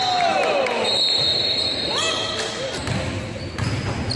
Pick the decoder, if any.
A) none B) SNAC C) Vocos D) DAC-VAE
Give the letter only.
A